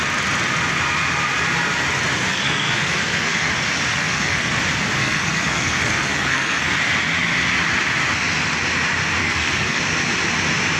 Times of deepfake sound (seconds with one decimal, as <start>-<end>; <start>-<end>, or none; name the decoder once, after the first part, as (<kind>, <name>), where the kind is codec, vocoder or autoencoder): 2.3-3.5 (codec, SNAC); 3.9-4.6; 5.0-6.7; 9.2-9.8